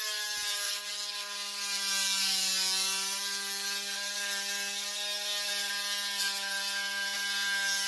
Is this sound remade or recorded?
recorded